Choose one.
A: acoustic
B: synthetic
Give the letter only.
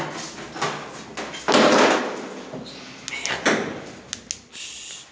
A